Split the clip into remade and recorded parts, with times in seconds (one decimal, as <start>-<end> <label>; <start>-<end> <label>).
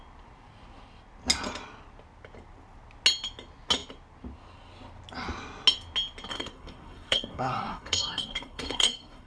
0.0-6.3 recorded; 6.3-9.3 remade